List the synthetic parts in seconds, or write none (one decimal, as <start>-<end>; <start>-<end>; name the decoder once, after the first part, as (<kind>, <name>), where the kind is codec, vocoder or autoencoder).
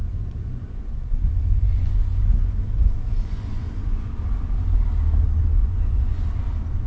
0.0-4.1 (vocoder, Vocos); 5.6-6.2